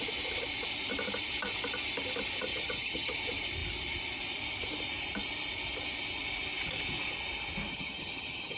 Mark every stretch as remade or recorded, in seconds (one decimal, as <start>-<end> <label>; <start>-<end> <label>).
0.0-2.5 recorded; 2.5-3.1 remade; 3.1-7.7 recorded; 7.7-8.6 remade